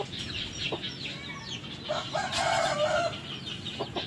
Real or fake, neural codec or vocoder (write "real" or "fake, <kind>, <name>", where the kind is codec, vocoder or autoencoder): real